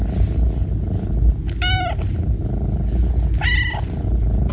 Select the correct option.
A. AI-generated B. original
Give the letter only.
B